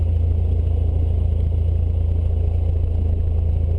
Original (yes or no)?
yes